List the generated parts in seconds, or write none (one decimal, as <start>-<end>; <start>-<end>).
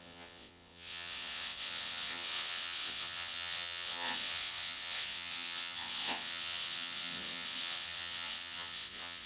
0.0-9.3